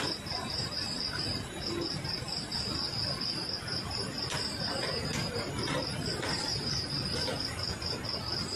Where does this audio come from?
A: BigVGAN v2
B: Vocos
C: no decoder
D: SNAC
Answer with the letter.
C